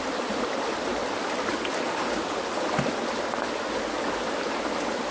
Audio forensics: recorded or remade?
recorded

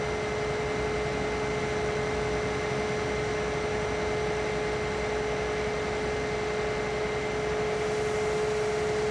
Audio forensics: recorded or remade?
recorded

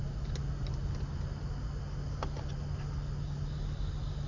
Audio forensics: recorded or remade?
recorded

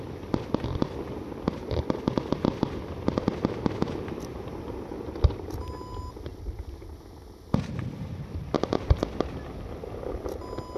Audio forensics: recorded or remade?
recorded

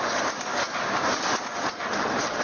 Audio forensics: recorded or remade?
recorded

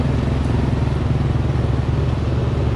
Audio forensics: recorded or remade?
recorded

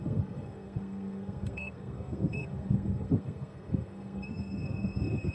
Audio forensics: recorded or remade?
remade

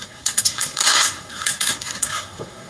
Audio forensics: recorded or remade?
remade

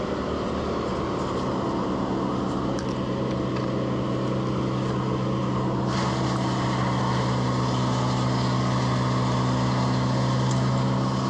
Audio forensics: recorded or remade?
recorded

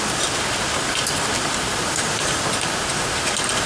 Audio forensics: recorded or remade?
recorded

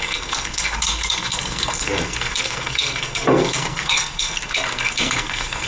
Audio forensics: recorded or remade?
remade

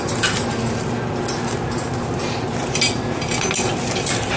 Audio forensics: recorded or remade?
recorded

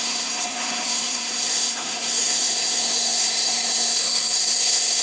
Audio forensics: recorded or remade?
remade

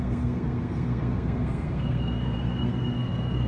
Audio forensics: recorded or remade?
remade